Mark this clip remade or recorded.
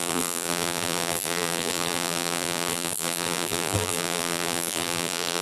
remade